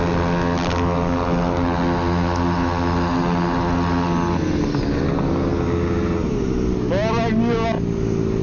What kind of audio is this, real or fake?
real